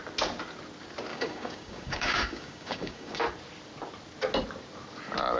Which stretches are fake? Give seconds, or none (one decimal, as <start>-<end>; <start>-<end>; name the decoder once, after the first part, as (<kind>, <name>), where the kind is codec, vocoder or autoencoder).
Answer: 1.1-3.2 (codec, DAC)